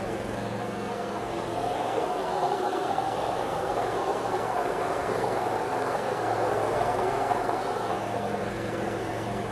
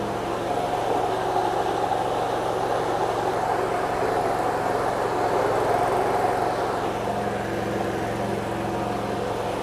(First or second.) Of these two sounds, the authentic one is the second